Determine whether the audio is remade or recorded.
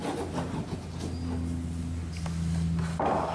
recorded